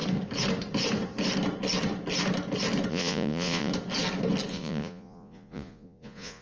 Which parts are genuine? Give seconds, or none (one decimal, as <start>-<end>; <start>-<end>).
0.0-2.9; 3.7-4.5